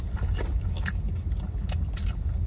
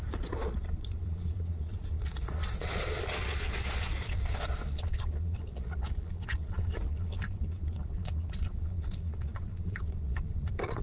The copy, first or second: second